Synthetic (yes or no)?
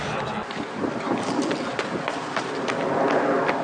no